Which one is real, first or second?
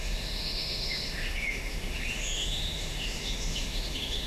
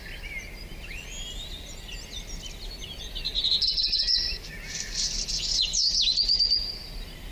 second